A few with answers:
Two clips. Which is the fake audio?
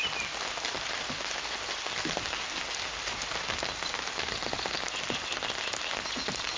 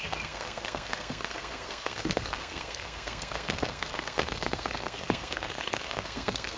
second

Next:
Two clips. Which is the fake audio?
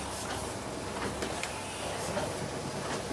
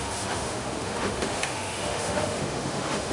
second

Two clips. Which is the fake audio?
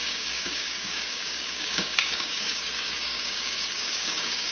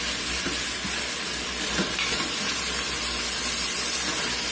first